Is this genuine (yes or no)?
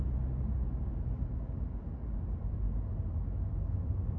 yes